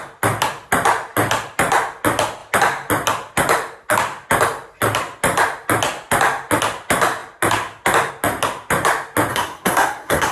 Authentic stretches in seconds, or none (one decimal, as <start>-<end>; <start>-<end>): 0.0-9.3